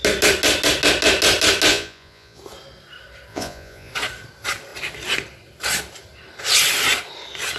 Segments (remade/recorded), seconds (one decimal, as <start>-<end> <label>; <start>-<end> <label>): 0.0-1.7 recorded; 1.7-2.4 remade; 2.4-3.3 recorded; 3.3-3.9 remade; 3.9-7.6 recorded